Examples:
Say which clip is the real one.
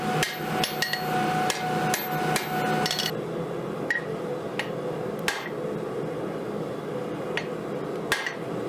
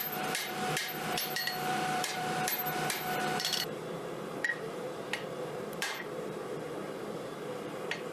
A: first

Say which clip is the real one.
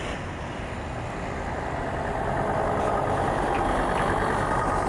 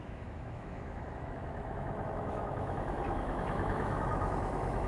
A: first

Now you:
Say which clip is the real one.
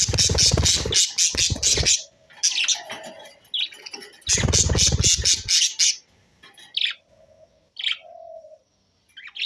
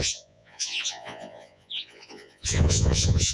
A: first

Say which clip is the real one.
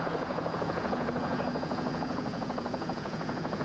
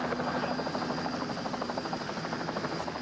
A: second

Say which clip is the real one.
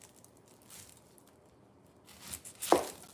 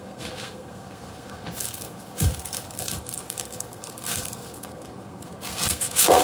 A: first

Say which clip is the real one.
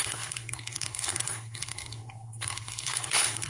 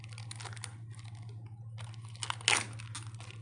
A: second